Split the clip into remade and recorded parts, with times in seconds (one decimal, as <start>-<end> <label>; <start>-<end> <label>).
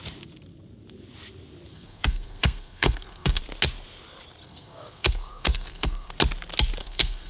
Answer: 0.0-1.7 recorded; 1.7-3.4 remade; 3.4-4.4 recorded; 4.4-6.1 remade; 6.1-6.8 recorded; 6.8-7.3 remade